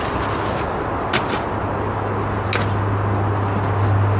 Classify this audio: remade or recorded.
recorded